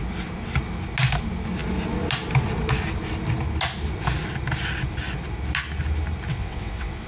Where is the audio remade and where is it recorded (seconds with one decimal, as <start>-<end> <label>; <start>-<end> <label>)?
0.0-6.3 recorded; 6.3-7.1 remade